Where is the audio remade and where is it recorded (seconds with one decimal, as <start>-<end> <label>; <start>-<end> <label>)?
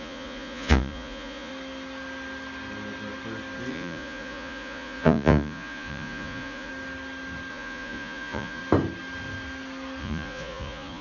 0.0-1.5 remade; 1.5-3.7 recorded; 3.7-6.7 remade; 6.7-7.5 recorded; 7.5-8.6 remade; 8.6-10.0 recorded; 10.0-11.0 remade